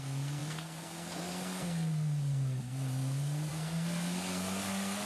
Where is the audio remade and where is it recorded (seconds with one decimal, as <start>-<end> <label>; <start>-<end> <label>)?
0.0-5.1 remade